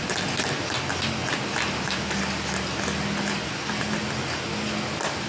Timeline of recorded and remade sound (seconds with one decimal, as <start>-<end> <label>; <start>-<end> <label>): 0.0-5.3 recorded